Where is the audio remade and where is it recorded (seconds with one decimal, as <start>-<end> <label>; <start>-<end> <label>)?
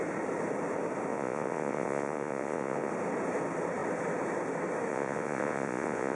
0.0-1.1 recorded; 1.1-2.9 remade; 2.9-4.9 recorded; 4.9-6.2 remade